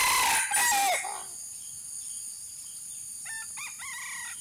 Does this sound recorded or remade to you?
recorded